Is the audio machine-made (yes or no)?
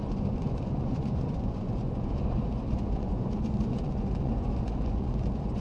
yes